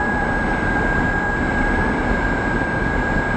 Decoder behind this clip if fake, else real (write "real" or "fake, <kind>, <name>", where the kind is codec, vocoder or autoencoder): real